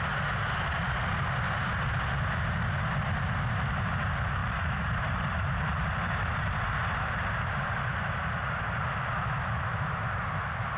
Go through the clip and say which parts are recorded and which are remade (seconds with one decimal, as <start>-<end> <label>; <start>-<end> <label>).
0.0-4.4 recorded; 4.4-6.5 remade; 6.5-10.8 recorded